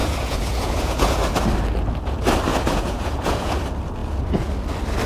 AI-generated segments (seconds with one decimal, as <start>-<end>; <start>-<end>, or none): 0.0-1.2; 2.5-3.6; 4.0-4.5

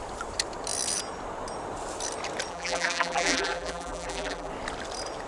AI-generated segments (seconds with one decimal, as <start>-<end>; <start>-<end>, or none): 2.5-4.5

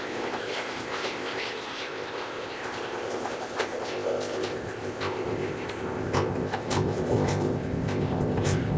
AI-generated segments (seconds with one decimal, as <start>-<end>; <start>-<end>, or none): 0.0-8.8

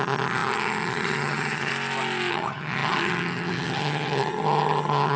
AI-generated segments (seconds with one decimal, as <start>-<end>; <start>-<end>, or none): 0.0-1.7; 2.3-5.2

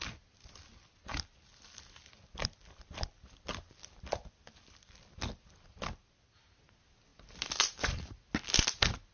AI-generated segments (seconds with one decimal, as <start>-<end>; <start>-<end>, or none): 1.1-5.2